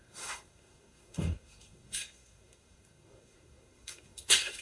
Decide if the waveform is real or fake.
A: fake